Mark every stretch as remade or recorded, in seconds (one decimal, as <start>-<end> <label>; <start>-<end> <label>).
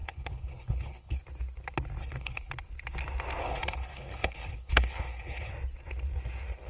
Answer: 0.0-1.2 remade; 1.2-2.0 recorded; 2.0-2.5 remade; 2.5-3.4 recorded; 3.4-5.5 remade; 5.5-6.7 recorded